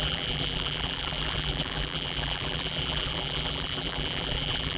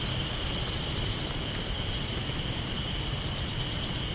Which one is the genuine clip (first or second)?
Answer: second